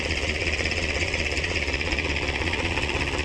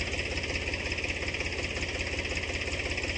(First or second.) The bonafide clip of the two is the second